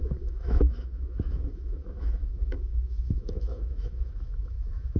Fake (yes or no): yes